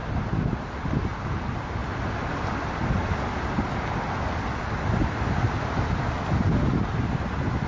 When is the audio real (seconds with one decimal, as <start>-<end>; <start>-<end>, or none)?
0.0-7.7